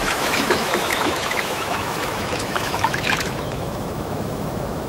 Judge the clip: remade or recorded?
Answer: remade